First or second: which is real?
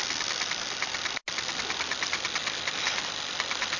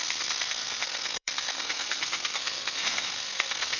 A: first